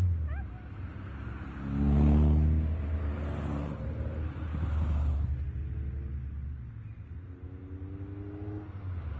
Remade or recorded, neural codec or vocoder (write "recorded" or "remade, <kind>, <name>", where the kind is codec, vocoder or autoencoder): recorded